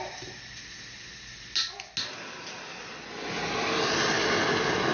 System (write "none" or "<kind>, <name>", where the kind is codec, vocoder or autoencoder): none